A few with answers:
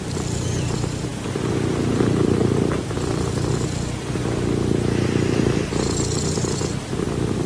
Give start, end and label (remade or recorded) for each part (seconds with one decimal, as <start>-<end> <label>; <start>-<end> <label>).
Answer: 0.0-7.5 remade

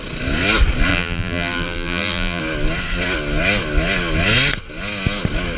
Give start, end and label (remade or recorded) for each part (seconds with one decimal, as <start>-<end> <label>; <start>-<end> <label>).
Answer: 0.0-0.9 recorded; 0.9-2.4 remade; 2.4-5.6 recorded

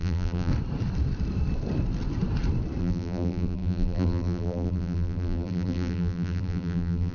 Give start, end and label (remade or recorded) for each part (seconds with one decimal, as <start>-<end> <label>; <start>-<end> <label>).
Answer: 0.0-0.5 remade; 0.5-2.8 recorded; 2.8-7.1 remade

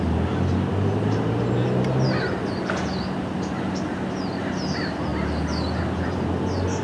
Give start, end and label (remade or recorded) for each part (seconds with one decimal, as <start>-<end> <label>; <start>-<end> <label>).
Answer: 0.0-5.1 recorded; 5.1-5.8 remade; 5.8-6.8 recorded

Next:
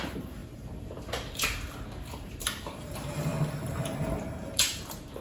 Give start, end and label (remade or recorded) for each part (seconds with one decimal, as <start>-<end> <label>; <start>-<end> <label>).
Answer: 0.0-3.3 remade; 3.3-3.8 recorded; 3.8-5.2 remade